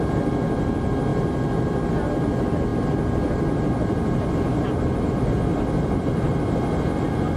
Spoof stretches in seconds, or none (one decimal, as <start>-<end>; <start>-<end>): 1.1-1.9; 5.5-6.3